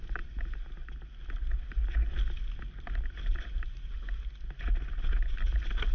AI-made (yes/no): no